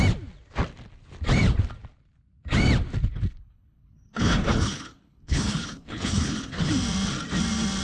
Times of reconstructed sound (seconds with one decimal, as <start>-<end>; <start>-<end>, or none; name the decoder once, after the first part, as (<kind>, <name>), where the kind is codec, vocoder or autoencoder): 3.1-6.7 (codec, HILCodec)